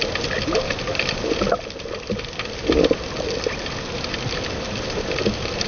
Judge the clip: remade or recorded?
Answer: recorded